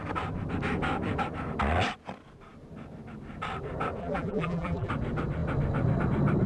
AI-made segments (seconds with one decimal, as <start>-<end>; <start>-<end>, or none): 4.0-4.9